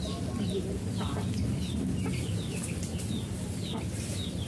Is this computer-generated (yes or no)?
no